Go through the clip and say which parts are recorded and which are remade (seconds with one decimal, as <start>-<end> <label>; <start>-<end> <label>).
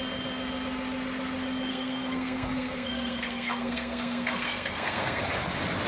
0.0-1.7 recorded; 1.7-5.2 remade; 5.2-5.9 recorded